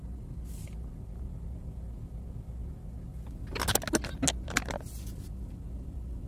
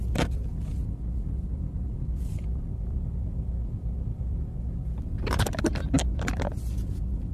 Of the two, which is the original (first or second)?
first